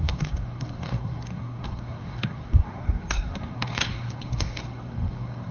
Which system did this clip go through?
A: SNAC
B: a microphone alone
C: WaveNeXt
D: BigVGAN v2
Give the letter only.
A